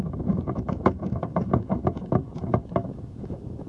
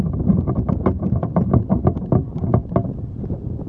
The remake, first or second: first